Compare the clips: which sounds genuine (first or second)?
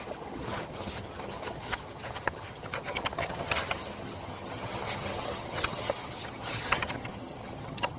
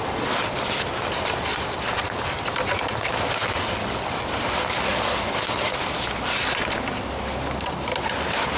second